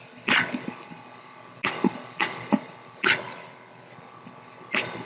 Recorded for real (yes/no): yes